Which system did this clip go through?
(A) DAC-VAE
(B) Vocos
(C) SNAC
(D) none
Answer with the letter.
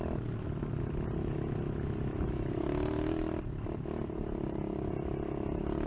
D